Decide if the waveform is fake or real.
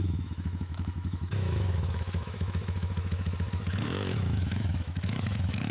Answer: fake